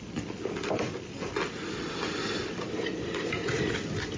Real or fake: real